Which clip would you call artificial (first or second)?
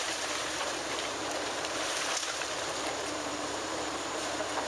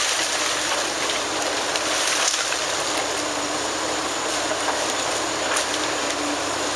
first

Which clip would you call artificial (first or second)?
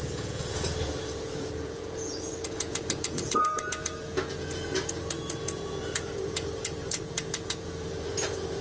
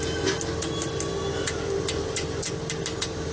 first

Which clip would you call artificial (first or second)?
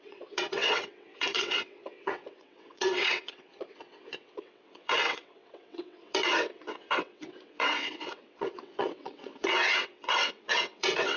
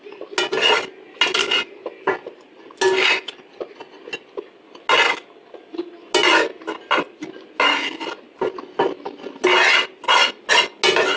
first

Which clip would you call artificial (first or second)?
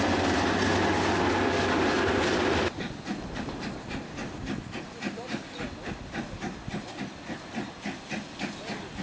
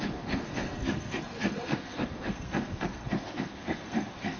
second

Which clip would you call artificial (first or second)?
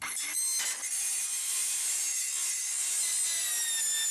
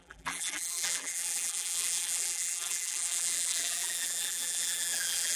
second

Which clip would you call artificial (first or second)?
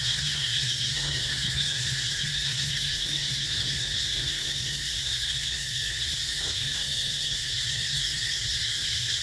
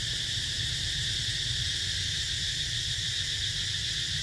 first